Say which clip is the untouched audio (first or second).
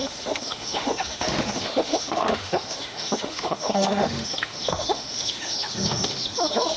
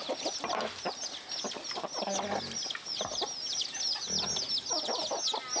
second